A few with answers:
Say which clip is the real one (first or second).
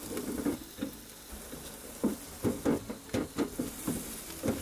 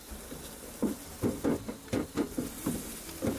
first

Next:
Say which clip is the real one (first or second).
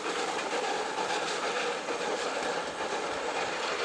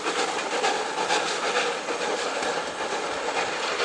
second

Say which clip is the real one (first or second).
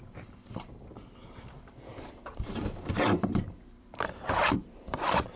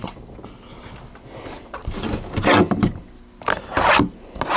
second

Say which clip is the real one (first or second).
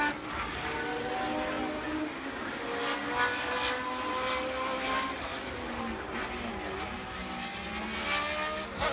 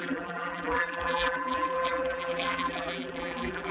first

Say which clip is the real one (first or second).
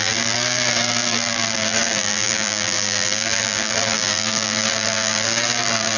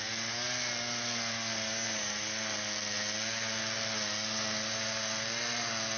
second